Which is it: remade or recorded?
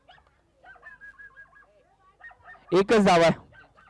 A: recorded